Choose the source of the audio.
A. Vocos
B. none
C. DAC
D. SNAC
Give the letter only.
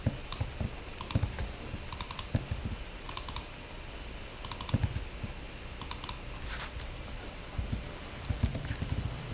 B